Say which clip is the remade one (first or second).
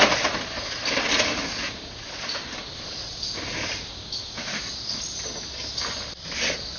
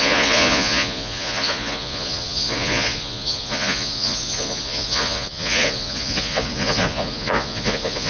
second